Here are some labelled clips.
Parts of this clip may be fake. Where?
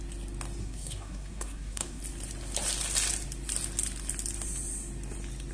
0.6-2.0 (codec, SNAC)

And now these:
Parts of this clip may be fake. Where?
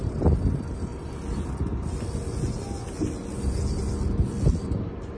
none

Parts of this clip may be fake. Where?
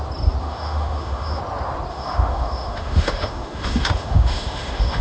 0.4-1.4 (autoencoder, DAC-VAE); 1.9-5.0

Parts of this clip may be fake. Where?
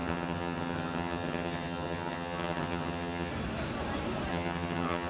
0.0-3.3 (vocoder, HiFi-GAN); 4.3-5.1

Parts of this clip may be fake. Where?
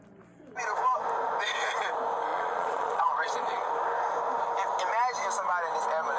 2.3-3.7 (vocoder, Vocos)